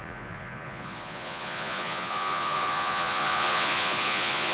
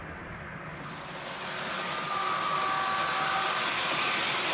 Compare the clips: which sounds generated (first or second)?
first